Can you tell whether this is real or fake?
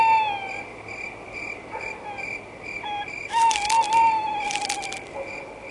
real